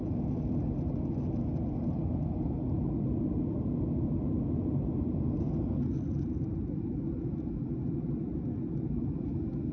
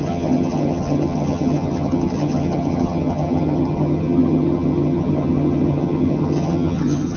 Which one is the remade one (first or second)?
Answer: second